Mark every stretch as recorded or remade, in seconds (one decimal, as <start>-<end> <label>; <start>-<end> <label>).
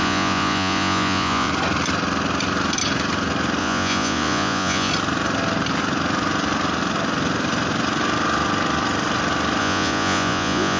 0.0-1.5 remade; 1.5-3.6 recorded; 3.6-4.9 remade; 4.9-9.6 recorded; 9.6-10.8 remade